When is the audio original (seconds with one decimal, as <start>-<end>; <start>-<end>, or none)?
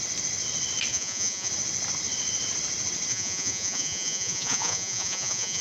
0.0-0.9; 1.5-3.1